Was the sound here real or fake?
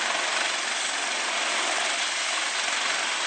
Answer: real